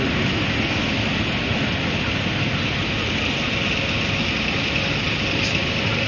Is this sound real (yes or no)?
yes